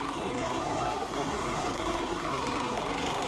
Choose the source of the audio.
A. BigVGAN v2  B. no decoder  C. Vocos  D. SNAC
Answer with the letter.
D